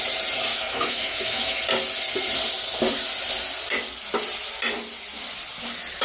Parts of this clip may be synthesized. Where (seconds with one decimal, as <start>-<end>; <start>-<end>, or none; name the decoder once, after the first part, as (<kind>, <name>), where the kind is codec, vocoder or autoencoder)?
0.5-1.6 (autoencoder, DAC-VAE)